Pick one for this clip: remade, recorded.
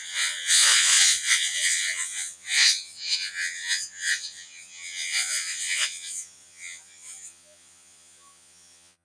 remade